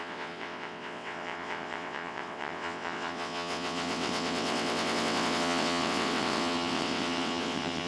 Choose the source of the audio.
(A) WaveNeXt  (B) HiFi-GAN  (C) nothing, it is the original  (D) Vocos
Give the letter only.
A